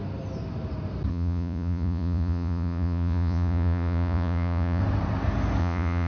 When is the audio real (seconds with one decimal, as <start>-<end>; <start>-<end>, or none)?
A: 0.0-1.1; 4.8-5.6